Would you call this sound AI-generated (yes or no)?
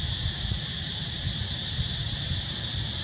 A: no